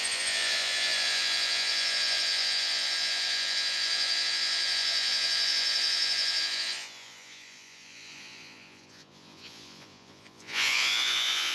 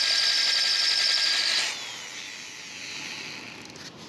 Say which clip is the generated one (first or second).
first